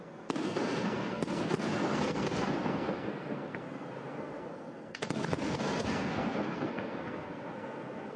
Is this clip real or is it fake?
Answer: fake